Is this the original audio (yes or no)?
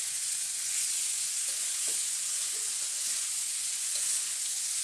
no